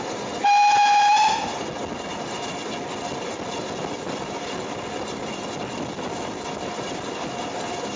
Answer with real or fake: real